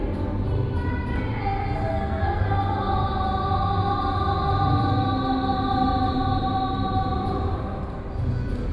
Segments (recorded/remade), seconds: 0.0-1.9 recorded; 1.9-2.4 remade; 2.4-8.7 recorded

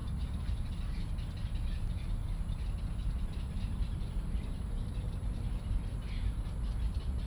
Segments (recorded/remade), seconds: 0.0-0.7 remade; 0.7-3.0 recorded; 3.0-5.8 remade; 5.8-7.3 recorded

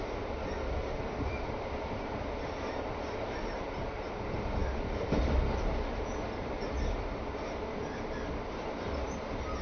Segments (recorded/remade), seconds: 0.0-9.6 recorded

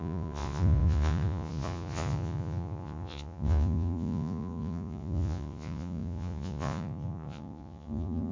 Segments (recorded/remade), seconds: 0.0-8.3 remade